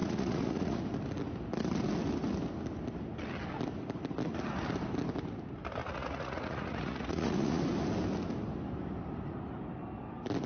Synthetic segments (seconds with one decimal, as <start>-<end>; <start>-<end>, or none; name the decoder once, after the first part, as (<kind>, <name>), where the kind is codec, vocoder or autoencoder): 0.0-0.8 (vocoder, Vocos); 5.8-7.6